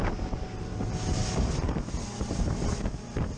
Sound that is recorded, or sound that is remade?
recorded